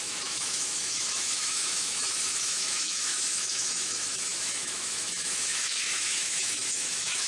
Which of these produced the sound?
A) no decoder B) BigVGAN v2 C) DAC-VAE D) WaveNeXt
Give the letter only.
C